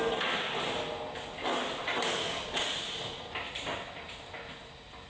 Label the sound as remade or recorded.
recorded